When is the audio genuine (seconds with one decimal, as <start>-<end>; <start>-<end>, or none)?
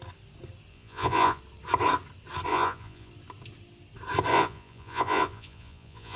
0.0-0.7; 1.4-2.5; 3.1-4.3